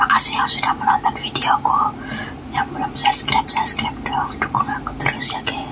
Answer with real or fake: real